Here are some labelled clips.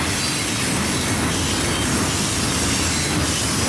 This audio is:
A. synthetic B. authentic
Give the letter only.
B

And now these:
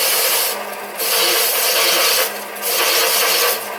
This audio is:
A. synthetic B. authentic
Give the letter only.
B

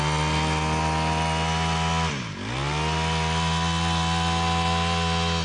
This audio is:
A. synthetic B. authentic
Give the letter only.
B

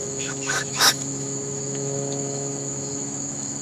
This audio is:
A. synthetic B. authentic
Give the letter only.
A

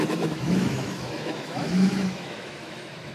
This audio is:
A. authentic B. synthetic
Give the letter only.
B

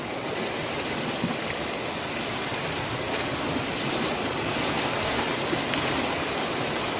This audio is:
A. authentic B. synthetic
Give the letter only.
A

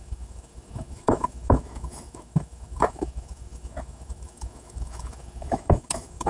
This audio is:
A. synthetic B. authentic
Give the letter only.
A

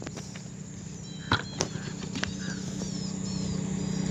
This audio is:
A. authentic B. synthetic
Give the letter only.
A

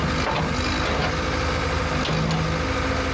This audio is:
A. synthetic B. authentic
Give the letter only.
B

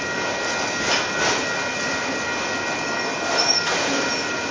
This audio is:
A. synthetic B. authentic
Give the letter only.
B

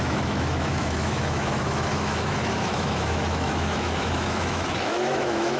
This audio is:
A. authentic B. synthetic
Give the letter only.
B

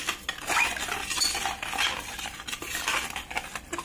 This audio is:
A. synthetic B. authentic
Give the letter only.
B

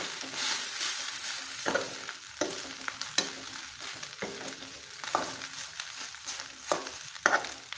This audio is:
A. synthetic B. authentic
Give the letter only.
B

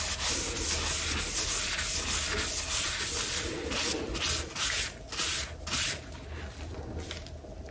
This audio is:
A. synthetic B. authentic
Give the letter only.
B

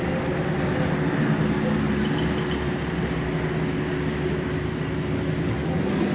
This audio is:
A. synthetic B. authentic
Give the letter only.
B